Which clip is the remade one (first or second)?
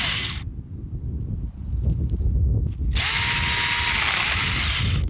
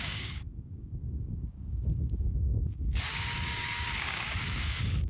second